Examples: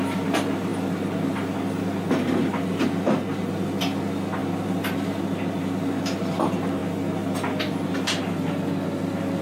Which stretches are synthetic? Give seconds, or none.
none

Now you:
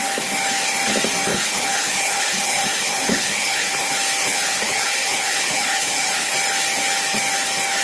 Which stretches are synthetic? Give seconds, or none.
1.3-3.7 (codec, HILCodec); 4.2-6.3

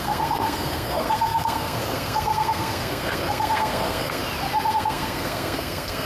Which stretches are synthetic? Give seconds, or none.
0.0-4.2 (codec, SNAC); 4.7-6.1